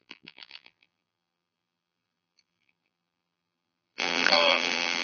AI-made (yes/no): yes